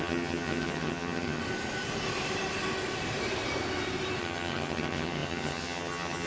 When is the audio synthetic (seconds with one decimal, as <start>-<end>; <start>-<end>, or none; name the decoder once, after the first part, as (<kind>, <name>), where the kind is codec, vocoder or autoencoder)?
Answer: 0.0-1.4 (vocoder, HiFi-GAN); 4.2-6.3